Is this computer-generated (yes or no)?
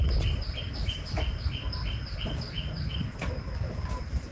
no